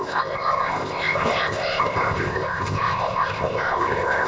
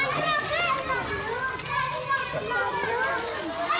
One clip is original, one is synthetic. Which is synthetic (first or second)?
first